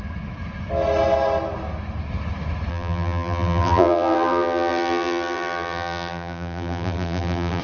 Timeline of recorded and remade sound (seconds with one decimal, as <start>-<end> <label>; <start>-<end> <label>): 0.0-2.7 recorded; 2.7-7.6 remade